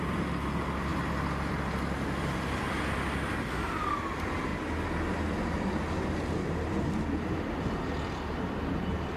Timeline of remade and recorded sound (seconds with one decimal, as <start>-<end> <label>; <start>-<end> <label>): 0.0-9.2 recorded